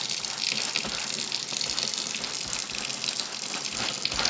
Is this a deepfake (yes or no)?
no